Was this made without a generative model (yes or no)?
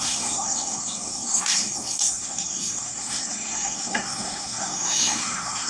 no